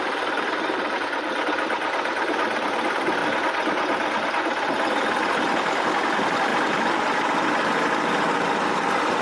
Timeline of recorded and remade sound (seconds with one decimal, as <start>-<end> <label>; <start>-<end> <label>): 0.0-3.2 remade; 3.2-5.2 recorded; 5.2-9.2 remade